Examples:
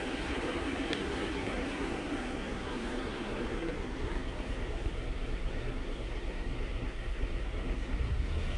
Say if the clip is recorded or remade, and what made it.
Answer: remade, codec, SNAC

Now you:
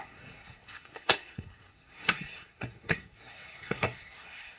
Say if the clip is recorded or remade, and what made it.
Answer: remade, codec, SNAC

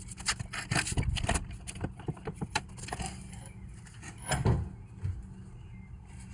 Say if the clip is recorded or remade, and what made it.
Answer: recorded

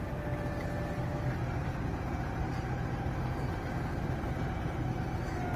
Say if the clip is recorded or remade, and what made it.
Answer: recorded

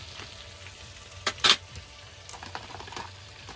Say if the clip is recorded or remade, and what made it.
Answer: recorded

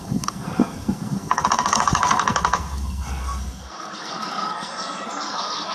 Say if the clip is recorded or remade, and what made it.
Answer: remade, codec, SNAC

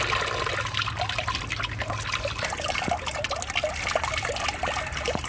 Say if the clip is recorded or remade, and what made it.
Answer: recorded